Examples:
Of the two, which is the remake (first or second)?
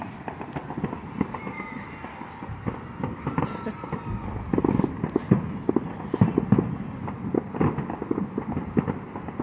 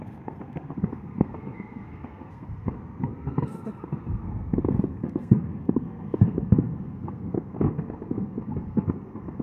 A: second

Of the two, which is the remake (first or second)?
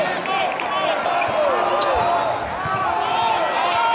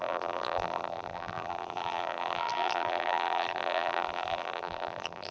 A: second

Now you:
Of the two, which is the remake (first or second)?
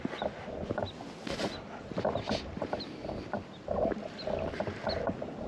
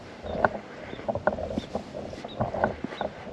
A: second